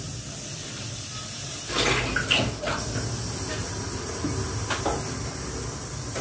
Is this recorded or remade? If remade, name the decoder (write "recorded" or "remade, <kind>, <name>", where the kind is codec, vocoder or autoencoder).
recorded